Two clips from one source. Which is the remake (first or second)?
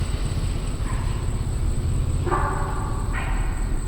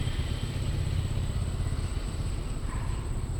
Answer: second